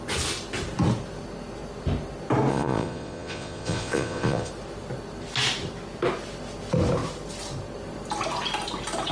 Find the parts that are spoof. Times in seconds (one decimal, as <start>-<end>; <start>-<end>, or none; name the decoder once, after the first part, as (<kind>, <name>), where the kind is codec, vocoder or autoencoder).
2.5-4.5 (vocoder, Vocos)